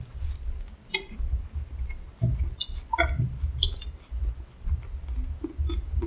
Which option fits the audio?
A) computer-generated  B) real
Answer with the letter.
B